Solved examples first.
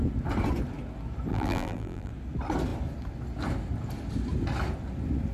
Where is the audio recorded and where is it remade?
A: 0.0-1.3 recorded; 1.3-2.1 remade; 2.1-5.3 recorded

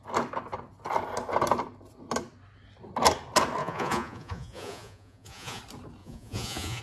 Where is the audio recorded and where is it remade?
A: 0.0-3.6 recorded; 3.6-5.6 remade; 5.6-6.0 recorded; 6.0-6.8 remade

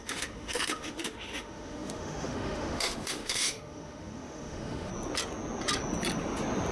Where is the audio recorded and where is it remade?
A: 0.0-4.9 remade; 4.9-6.7 recorded

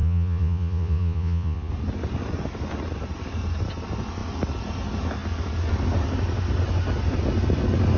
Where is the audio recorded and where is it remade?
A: 0.0-1.7 remade; 1.7-8.0 recorded

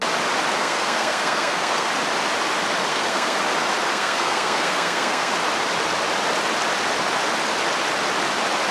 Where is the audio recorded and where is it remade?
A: 0.0-0.6 recorded; 0.6-1.9 remade; 1.9-2.9 recorded; 2.9-3.4 remade; 3.4-3.9 recorded; 3.9-5.3 remade; 5.3-8.7 recorded

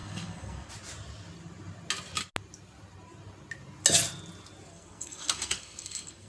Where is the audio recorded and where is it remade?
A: 0.0-0.7 remade; 0.7-4.7 recorded; 4.7-6.3 remade